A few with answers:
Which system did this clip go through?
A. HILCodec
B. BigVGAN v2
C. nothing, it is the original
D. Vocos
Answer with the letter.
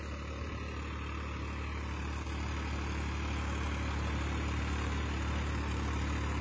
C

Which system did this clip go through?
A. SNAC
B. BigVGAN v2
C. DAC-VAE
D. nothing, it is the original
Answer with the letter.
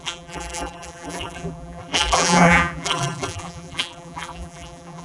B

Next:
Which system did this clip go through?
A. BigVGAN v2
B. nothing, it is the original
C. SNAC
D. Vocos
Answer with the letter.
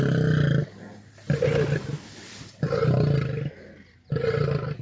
B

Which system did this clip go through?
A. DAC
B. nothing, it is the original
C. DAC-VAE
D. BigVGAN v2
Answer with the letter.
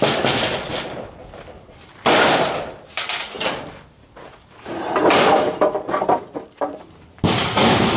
D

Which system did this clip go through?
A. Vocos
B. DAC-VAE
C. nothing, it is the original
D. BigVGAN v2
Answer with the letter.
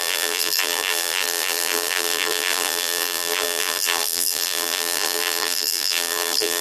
D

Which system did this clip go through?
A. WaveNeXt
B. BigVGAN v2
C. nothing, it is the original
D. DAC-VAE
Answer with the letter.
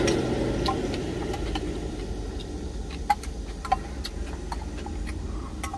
C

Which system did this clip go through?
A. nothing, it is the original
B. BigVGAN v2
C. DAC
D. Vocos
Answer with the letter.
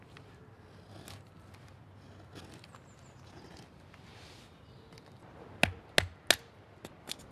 A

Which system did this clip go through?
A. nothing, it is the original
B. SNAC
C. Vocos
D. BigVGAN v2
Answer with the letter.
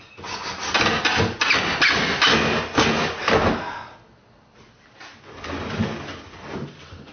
A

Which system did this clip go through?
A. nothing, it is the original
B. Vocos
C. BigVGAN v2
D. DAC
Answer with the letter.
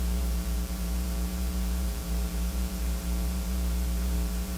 C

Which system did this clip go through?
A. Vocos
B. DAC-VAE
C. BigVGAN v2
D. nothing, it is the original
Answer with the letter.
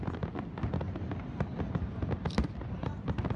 D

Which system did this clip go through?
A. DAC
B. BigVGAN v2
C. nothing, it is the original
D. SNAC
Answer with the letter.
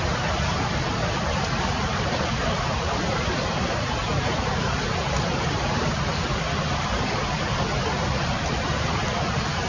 B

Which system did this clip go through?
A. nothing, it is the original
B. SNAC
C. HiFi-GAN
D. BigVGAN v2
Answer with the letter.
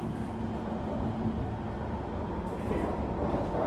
A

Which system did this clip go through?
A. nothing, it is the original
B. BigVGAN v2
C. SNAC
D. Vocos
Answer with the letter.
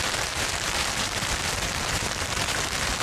B